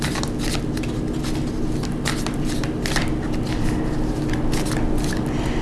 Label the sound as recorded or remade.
recorded